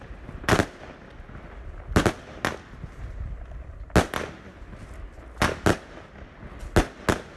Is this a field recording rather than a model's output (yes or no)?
yes